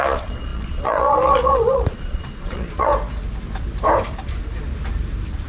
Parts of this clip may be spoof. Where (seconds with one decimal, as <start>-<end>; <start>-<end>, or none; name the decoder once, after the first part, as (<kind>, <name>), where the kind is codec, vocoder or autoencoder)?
0.0-2.9 (vocoder, Vocos)